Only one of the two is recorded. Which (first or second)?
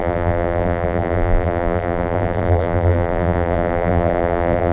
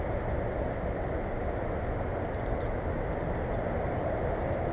second